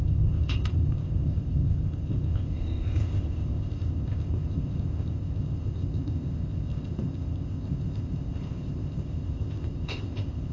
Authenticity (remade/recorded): remade